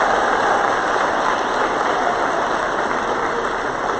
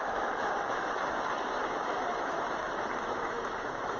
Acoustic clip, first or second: first